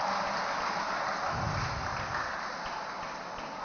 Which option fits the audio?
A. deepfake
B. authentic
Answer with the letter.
B